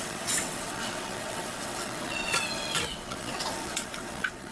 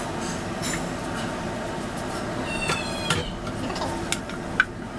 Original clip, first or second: second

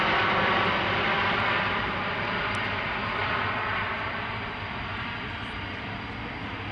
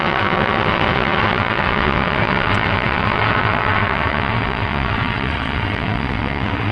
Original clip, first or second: first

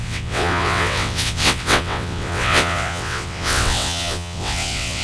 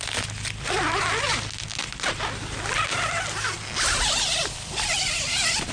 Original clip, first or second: second